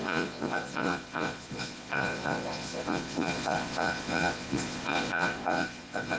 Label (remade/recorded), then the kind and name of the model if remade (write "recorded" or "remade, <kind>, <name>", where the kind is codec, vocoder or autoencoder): remade, vocoder, Vocos